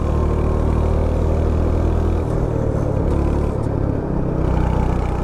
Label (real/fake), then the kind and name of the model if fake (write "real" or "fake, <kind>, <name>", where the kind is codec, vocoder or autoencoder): real